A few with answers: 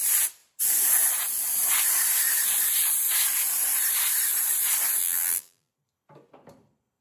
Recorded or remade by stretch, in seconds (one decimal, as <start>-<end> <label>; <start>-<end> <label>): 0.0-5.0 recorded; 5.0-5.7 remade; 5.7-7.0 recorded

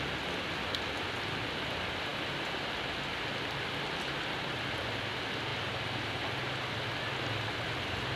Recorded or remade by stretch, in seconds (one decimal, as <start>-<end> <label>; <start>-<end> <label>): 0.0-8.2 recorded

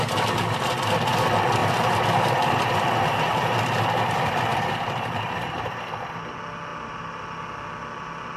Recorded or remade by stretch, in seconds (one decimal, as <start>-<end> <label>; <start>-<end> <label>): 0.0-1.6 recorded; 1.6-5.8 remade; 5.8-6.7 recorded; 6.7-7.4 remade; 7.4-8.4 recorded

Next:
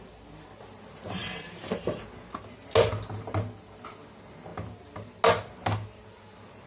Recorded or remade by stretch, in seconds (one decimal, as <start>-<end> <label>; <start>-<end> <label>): 0.0-1.2 recorded; 1.2-2.0 remade; 2.0-6.7 recorded

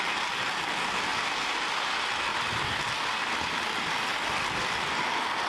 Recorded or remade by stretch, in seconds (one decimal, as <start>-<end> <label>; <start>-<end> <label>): 0.0-1.1 recorded; 1.1-1.7 remade; 1.7-5.5 recorded

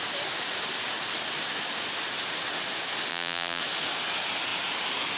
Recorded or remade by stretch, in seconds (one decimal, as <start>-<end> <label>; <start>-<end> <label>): 0.0-3.1 recorded; 3.1-3.6 remade; 3.6-5.2 recorded